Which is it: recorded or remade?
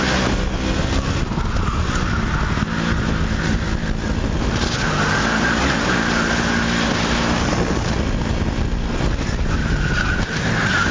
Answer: recorded